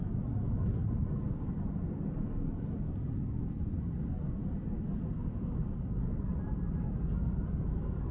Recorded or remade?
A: recorded